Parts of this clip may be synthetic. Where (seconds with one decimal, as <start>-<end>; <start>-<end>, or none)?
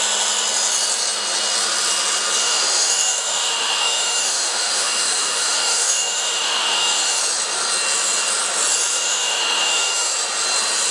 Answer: 2.4-7.2; 8.9-10.1